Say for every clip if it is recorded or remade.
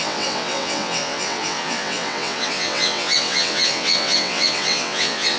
remade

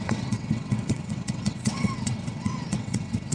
remade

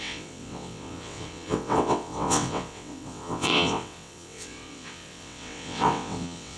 remade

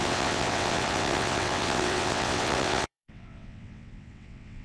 remade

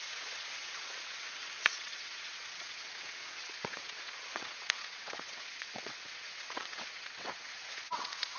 remade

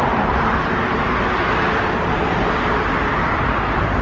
recorded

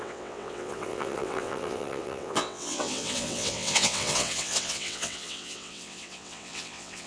remade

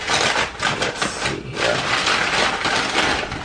recorded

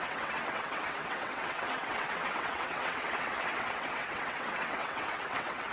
remade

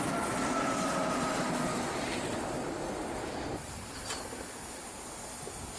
recorded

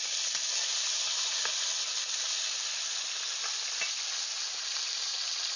recorded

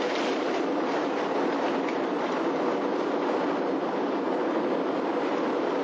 recorded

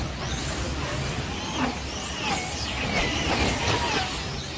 recorded